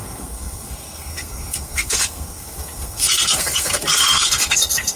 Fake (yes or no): yes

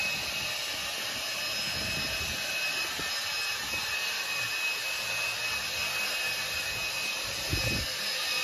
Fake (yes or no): no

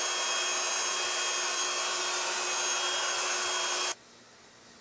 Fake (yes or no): no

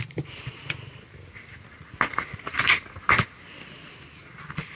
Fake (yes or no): yes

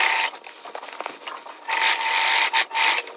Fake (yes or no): no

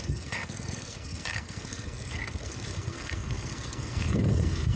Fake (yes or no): yes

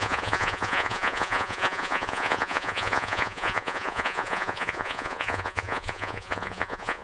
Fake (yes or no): yes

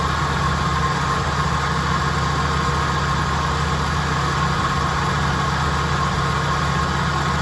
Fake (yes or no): no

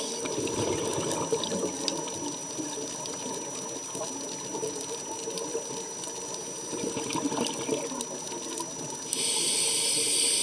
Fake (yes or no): no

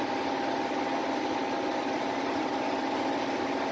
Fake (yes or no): no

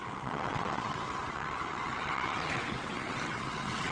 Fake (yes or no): yes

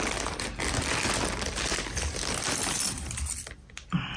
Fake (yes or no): no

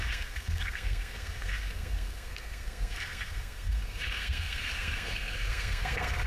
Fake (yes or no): yes